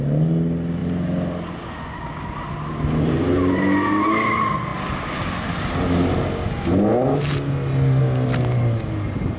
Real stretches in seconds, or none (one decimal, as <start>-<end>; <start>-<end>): 0.0-9.4